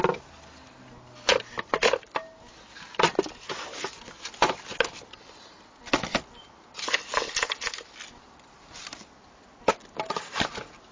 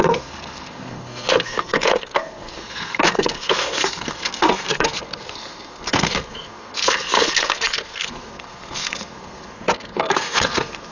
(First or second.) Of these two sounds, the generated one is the second